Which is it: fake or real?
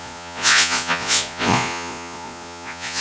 fake